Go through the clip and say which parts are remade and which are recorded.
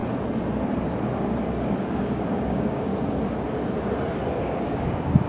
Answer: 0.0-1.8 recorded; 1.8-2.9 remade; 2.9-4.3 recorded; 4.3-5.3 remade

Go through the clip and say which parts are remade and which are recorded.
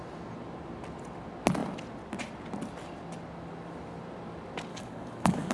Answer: 0.0-4.7 recorded; 4.7-5.5 remade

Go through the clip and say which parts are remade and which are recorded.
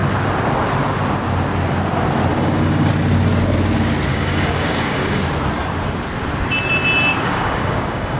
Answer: 0.0-2.3 recorded; 2.3-2.9 remade; 2.9-4.1 recorded; 4.1-5.2 remade; 5.2-7.1 recorded; 7.1-8.2 remade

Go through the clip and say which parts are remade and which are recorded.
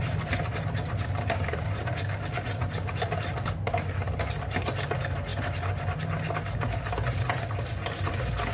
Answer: 0.0-8.5 recorded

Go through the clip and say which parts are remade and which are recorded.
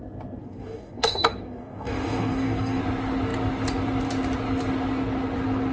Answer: 0.0-0.4 recorded; 0.4-2.8 remade; 2.8-5.7 recorded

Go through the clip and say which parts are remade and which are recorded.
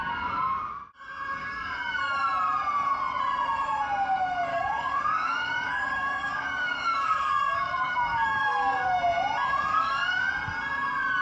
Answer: 0.0-1.4 recorded; 1.4-2.0 remade; 2.0-4.5 recorded; 4.5-9.0 remade; 9.0-9.7 recorded; 9.7-10.3 remade; 10.3-11.2 recorded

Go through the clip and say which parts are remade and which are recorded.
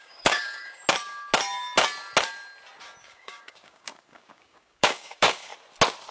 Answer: 0.0-0.8 remade; 0.8-3.0 recorded; 3.0-5.5 remade; 5.5-6.1 recorded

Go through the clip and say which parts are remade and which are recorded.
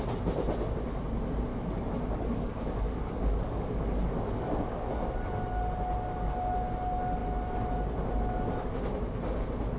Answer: 0.0-1.5 recorded; 1.5-5.1 remade; 5.1-9.8 recorded